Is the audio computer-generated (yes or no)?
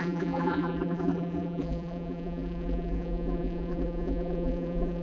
yes